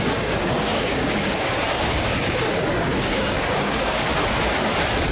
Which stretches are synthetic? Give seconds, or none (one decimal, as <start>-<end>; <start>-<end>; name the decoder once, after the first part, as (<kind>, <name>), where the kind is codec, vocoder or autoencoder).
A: 0.0-4.1 (codec, DAC)